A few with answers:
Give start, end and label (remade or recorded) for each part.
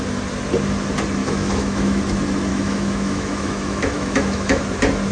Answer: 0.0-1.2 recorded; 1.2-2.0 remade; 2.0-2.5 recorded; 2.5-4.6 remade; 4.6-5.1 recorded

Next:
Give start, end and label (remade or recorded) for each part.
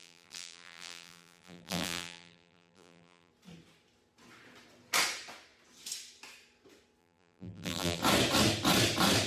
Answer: 0.0-3.3 remade; 3.3-7.0 recorded; 7.0-8.0 remade; 8.0-9.3 recorded